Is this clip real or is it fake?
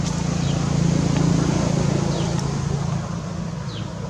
real